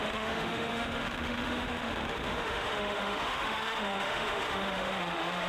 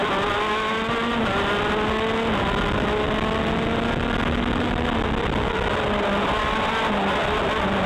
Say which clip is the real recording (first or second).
second